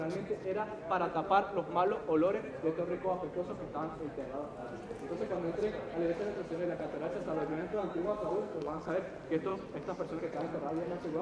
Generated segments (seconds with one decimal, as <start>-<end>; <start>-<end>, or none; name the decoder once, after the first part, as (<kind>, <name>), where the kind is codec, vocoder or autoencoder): 7.5-8.9 (codec, SNAC)